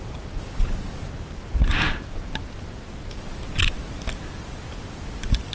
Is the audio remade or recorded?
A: recorded